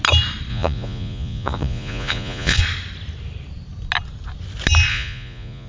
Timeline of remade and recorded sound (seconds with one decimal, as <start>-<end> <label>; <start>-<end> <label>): 0.0-0.5 recorded; 0.5-2.6 remade; 2.6-4.9 recorded; 4.9-5.7 remade